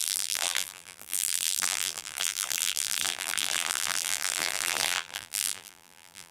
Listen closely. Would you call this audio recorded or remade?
remade